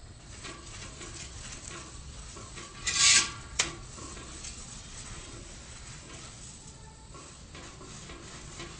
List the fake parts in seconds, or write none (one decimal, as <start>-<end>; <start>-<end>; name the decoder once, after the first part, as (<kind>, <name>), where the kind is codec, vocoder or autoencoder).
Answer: 0.0-7.4 (vocoder, Vocos)